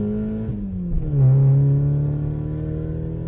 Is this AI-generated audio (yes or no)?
no